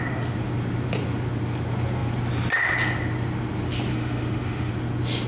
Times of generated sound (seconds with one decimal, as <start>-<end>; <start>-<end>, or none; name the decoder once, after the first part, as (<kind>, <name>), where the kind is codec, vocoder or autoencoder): 3.9-4.7 (autoencoder, DAC-VAE)